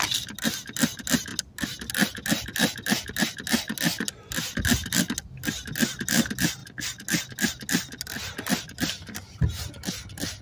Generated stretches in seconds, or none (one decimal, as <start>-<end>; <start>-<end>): none

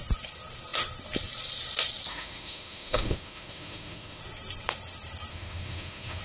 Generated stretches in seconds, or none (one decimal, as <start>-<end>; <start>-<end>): 2.1-4.2; 5.3-6.2